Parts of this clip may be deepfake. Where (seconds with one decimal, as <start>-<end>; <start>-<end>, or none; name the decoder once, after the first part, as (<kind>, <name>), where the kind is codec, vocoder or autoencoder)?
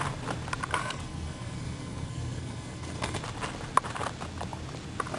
0.8-3.2 (codec, SNAC)